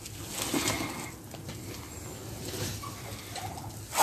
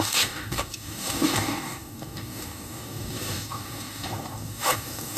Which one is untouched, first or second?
first